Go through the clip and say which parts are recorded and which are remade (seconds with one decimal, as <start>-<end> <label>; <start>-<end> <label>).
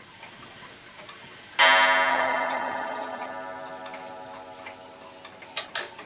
0.0-2.1 recorded; 2.1-3.3 remade; 3.3-6.1 recorded